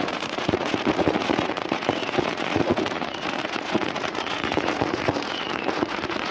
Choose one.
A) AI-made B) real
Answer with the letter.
A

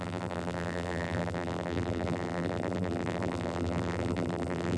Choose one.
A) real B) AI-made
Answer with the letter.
B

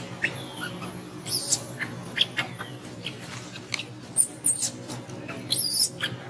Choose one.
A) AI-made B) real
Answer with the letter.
B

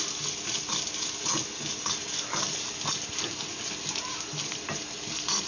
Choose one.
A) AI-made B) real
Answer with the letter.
B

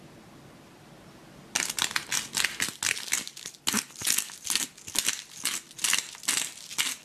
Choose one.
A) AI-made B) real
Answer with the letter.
B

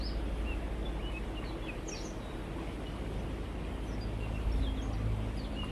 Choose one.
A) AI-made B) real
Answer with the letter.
B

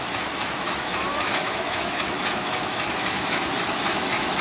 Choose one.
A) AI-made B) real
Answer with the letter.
A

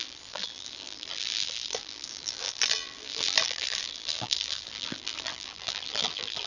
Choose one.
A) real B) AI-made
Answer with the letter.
B